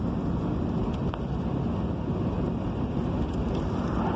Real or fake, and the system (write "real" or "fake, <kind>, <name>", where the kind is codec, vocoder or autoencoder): real